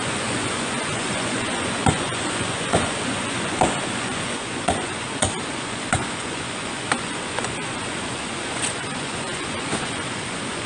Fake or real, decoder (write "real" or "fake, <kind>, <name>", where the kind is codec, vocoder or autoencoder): fake, vocoder, Vocos